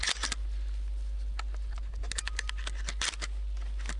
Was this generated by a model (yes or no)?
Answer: no